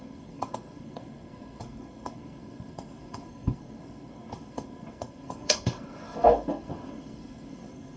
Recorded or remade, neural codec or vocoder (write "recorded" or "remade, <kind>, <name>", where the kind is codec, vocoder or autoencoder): remade, codec, SNAC